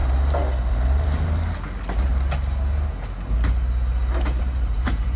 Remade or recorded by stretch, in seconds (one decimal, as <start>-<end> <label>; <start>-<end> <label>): 0.0-0.7 recorded; 0.7-2.1 remade; 2.1-4.4 recorded; 4.4-5.2 remade